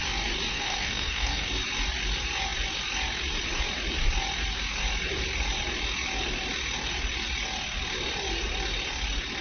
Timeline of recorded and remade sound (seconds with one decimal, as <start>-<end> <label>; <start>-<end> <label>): 0.0-0.5 recorded; 0.5-1.5 remade; 1.5-9.4 recorded